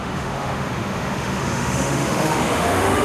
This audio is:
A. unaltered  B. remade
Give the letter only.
B